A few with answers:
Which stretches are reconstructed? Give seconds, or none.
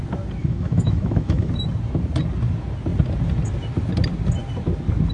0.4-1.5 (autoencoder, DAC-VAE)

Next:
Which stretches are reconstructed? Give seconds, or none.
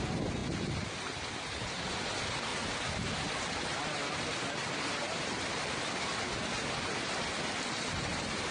none